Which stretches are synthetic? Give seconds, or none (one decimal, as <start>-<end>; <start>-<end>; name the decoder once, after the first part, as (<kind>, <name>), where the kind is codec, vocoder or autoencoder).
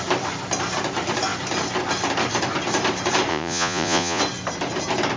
3.3-4.2 (vocoder, Vocos)